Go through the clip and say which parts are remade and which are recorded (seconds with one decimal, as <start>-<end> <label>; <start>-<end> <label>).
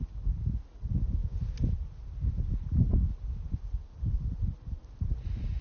0.0-5.6 recorded